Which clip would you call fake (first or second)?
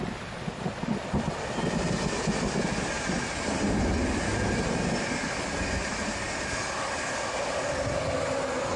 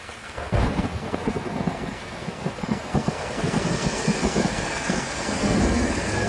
second